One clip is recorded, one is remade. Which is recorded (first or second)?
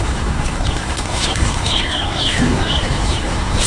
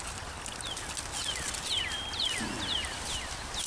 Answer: second